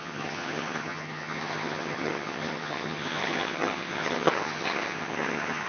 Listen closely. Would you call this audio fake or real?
fake